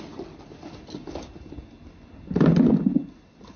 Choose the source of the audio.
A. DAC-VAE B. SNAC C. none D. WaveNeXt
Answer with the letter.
C